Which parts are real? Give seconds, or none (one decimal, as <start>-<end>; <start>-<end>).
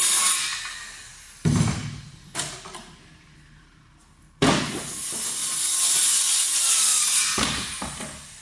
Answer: 0.0-8.4